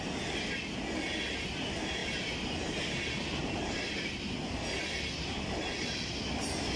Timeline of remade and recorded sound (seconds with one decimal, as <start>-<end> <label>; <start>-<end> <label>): 0.0-6.8 recorded